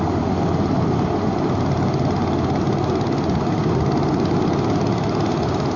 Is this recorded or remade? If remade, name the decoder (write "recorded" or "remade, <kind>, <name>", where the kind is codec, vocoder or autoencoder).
recorded